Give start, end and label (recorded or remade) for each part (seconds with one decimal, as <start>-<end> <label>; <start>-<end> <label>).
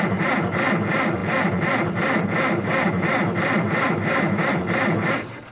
0.0-5.5 remade